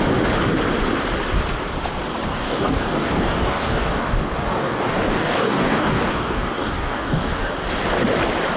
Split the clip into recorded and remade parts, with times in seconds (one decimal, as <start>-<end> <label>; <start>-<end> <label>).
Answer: 0.0-2.3 recorded; 2.3-7.5 remade; 7.5-8.6 recorded